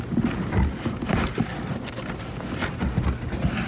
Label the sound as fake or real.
real